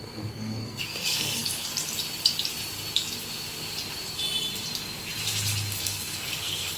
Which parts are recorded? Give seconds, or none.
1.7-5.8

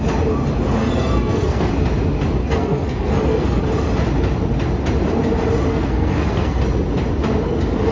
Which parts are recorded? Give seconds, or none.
0.0-0.8; 1.7-2.4; 3.6-5.7; 6.6-7.9

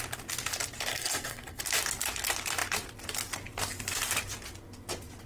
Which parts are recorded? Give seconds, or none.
0.0-0.9; 1.6-5.3

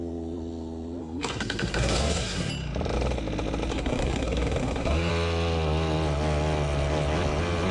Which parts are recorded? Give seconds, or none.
0.0-1.0; 2.5-3.7; 5.1-7.7

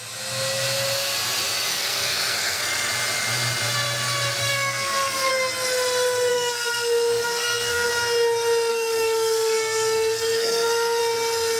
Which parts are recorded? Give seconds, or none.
0.0-1.7; 2.9-4.4; 5.3-6.3; 7.9-8.7; 11.0-11.6

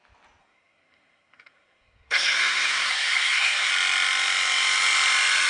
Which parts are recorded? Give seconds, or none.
0.0-0.4; 3.7-5.5

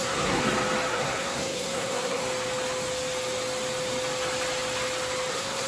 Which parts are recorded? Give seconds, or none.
0.4-0.9; 2.2-5.3